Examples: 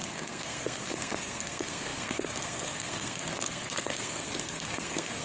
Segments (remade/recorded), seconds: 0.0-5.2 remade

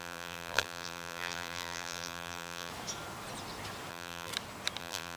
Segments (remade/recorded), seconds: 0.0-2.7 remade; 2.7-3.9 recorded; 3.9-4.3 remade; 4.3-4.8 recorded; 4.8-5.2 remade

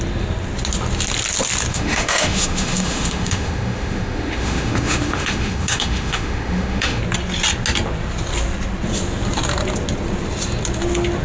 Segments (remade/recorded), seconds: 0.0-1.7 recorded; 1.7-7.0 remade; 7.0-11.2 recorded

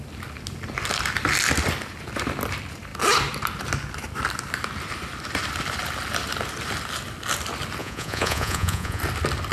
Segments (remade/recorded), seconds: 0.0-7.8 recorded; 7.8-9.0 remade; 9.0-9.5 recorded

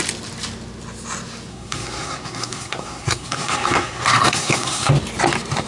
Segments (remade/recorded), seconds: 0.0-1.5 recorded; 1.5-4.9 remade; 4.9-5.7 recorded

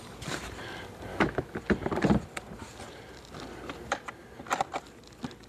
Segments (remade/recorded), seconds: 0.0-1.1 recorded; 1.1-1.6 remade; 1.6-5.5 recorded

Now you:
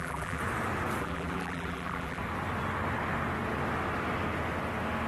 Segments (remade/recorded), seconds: 0.0-0.4 remade; 0.4-1.0 recorded; 1.0-2.2 remade; 2.2-5.1 recorded